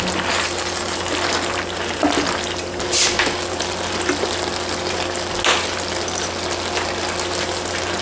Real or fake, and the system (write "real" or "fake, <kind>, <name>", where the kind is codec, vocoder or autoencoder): real